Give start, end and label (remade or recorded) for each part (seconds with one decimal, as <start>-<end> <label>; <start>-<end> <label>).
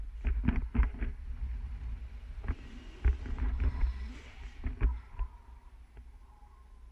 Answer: 0.0-1.5 recorded; 1.5-5.6 remade; 5.6-6.9 recorded